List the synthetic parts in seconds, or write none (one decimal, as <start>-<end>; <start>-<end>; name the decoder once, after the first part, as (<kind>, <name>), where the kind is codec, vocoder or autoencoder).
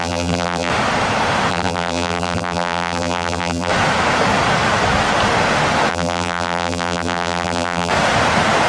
0.0-0.7 (vocoder, BigVGAN v2); 1.5-3.7; 5.9-7.9